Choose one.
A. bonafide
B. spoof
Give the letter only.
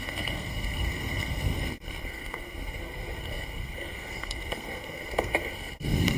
B